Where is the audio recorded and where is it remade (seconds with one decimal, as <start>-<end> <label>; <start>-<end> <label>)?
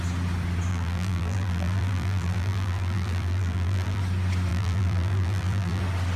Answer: 0.0-0.7 recorded; 0.7-4.0 remade; 4.0-4.5 recorded; 4.5-5.8 remade; 5.8-6.2 recorded